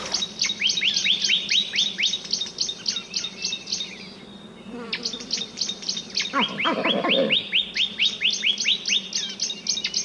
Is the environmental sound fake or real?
real